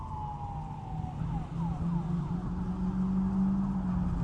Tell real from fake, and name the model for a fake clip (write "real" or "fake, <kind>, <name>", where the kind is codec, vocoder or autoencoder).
real